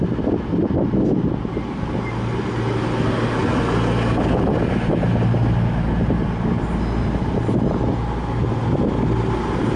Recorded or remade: recorded